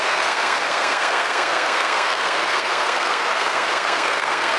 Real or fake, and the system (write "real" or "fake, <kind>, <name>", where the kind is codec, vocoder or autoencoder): fake, codec, SNAC